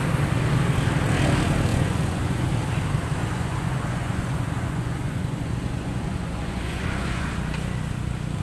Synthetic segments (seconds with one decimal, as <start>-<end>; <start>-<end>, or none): 1.7-2.5; 3.2-7.3